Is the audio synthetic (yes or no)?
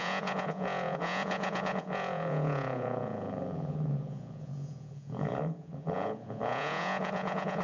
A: yes